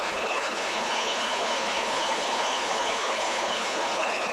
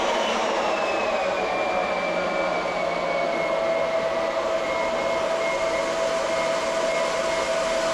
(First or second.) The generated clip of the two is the first